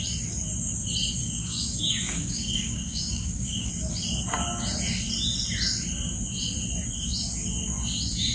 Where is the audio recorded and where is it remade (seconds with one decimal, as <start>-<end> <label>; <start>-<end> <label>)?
0.0-1.2 recorded; 1.2-3.7 remade; 3.7-8.3 recorded